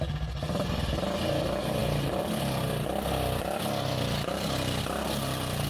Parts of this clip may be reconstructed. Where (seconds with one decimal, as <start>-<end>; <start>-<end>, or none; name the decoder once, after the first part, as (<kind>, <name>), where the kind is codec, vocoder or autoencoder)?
none